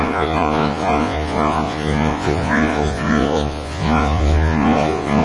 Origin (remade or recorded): remade